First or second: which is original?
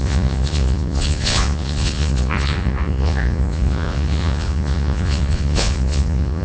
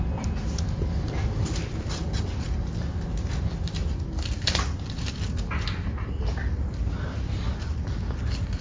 second